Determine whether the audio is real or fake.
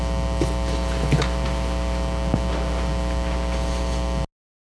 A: real